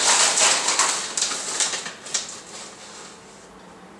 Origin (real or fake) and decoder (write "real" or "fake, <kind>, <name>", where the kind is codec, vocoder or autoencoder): real